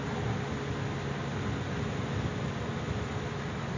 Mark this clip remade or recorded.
recorded